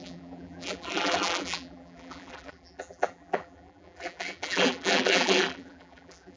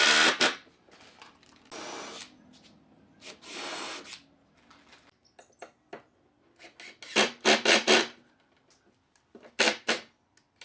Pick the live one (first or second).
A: second